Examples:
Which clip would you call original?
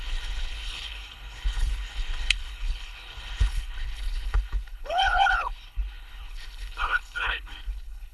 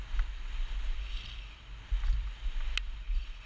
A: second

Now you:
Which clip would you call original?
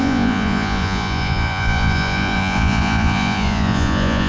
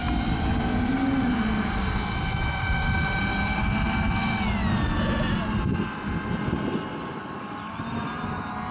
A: second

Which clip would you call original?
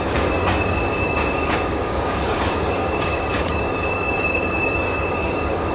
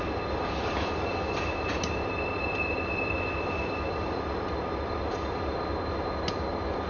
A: second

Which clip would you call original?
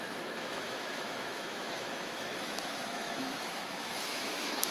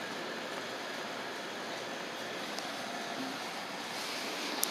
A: second